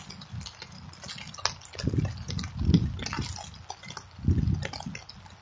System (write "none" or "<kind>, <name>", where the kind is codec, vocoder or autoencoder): none